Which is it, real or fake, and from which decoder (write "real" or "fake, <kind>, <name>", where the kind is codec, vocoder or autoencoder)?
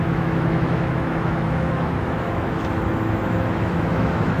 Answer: fake, autoencoder, DAC-VAE